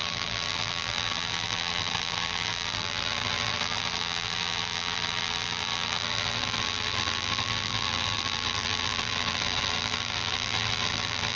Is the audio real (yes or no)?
no